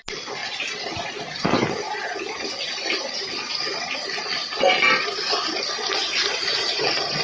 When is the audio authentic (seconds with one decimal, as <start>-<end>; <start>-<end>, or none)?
0.0-6.0; 6.8-7.2